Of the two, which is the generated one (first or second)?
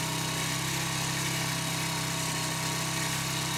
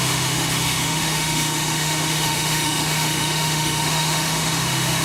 second